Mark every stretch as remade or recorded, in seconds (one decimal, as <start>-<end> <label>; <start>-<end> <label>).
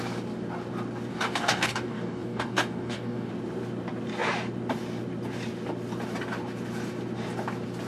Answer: 0.0-1.1 recorded; 1.1-3.3 remade; 3.3-7.9 recorded